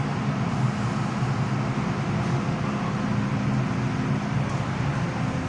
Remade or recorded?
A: recorded